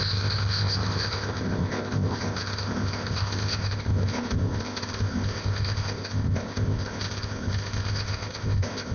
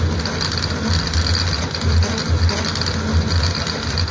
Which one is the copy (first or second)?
first